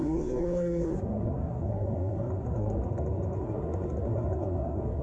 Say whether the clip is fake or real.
fake